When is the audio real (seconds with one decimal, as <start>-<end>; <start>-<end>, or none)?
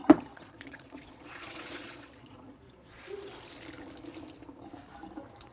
3.3-5.5